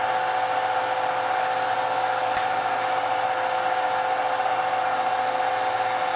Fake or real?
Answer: real